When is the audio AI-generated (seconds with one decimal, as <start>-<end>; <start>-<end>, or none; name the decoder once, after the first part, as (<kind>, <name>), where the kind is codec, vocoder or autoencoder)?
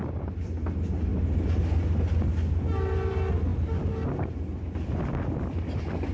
none